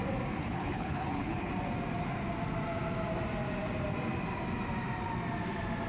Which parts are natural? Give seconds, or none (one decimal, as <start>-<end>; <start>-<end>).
0.0-0.4; 1.5-5.9